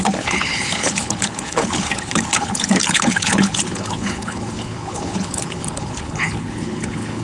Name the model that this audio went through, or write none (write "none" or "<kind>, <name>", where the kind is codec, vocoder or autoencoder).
codec, HILCodec